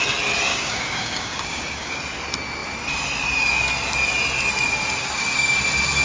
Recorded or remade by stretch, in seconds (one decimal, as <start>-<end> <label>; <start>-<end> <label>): 0.0-0.5 recorded; 0.5-2.0 remade; 2.0-5.0 recorded; 5.0-5.6 remade; 5.6-6.0 recorded